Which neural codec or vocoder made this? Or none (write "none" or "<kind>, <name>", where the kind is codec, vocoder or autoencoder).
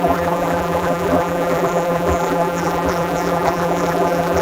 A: vocoder, BigVGAN v2